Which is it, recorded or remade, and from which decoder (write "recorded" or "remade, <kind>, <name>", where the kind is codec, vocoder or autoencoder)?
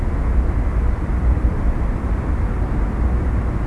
recorded